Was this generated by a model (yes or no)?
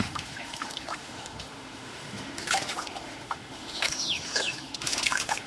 yes